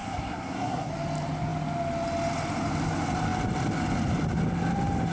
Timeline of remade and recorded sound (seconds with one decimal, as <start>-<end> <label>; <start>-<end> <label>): 0.0-0.9 remade; 0.9-5.1 recorded

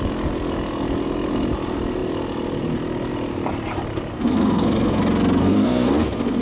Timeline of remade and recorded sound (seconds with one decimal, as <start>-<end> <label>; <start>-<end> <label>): 0.0-4.1 recorded; 4.1-5.0 remade; 5.0-5.4 recorded; 5.4-6.4 remade

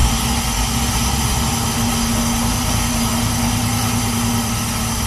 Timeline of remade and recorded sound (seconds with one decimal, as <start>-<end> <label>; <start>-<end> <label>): 0.0-5.1 recorded